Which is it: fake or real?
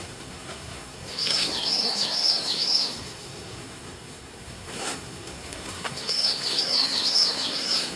fake